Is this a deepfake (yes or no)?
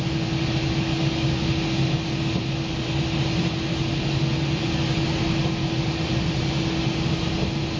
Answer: no